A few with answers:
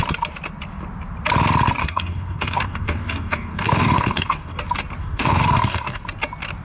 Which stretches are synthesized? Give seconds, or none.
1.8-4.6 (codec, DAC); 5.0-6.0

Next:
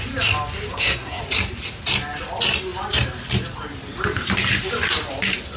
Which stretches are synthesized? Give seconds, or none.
0.7-1.2 (codec, SNAC)

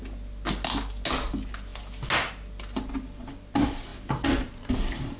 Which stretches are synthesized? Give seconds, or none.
none

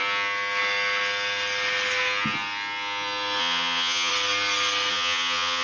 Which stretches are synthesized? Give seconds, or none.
3.4-4.1 (vocoder, HiFi-GAN); 4.9-5.6